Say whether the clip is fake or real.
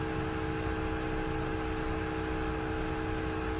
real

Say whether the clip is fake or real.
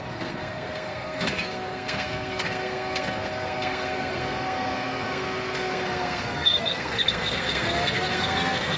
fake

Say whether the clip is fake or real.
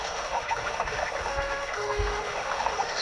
fake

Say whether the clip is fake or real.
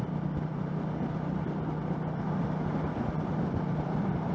fake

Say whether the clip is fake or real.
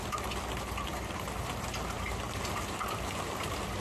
real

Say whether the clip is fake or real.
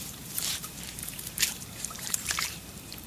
fake